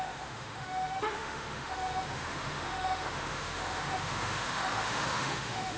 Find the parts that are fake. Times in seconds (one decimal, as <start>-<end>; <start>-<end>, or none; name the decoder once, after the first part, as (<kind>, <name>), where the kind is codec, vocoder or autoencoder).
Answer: 0.0-5.8 (autoencoder, DAC-VAE)